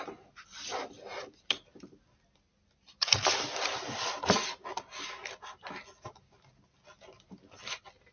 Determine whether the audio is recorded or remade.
recorded